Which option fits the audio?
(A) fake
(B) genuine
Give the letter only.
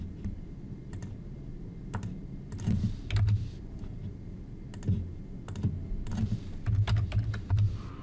B